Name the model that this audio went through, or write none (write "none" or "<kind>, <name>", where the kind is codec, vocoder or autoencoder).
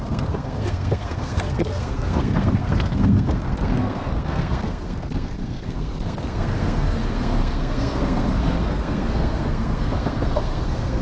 codec, SNAC